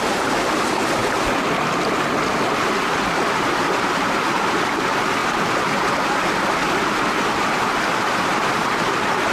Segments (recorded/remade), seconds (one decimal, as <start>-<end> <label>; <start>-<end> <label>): 0.0-9.3 recorded